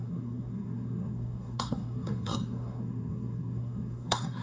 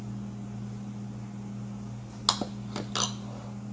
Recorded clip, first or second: second